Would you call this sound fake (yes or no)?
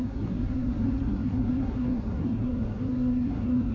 yes